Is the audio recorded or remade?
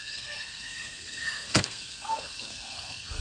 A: remade